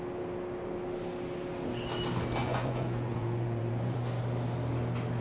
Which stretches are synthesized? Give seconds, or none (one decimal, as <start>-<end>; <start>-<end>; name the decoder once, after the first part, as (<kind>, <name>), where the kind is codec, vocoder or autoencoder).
2.4-4.0 (vocoder, Vocos)